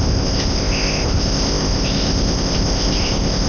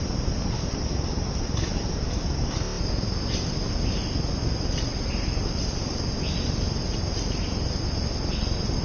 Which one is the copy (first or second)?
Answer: first